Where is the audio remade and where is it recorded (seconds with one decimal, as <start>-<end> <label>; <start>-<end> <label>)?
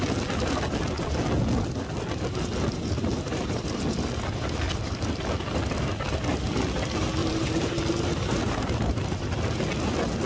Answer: 0.0-3.1 recorded; 3.1-3.8 remade; 3.8-7.2 recorded; 7.2-9.0 remade; 9.0-10.3 recorded